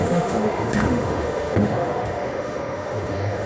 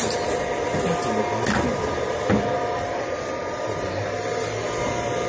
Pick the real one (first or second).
second